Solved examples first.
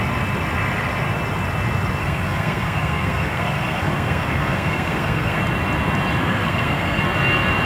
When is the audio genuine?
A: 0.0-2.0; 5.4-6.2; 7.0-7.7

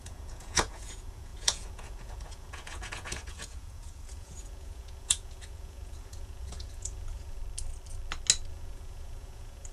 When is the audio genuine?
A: 7.4-8.5

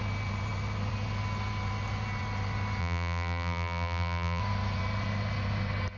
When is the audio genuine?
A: 0.0-2.8; 4.4-6.0